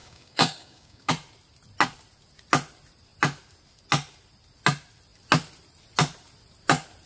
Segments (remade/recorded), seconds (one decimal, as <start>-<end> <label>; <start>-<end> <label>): 0.0-1.1 remade; 1.1-7.1 recorded